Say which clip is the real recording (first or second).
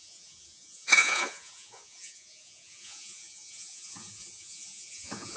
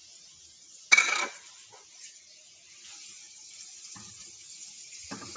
second